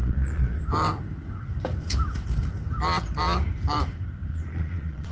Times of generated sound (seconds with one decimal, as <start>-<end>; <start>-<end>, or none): 0.0-0.6; 4.3-5.1

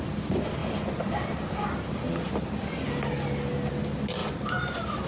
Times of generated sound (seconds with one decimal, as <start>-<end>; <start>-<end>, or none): none